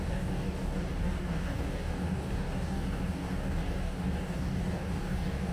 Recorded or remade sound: remade